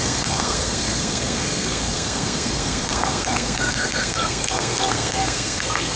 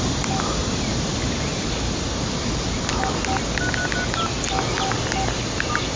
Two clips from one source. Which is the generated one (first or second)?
first